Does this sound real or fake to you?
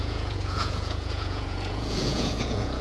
fake